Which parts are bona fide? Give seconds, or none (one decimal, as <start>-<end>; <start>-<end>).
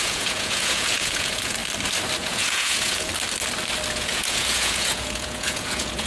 1.6-2.2; 3.1-3.9